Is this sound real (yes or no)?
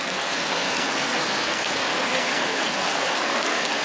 no